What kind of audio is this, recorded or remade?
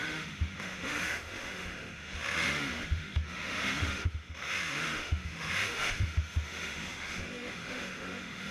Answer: remade